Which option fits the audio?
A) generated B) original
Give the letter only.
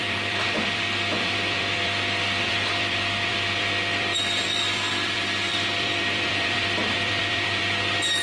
A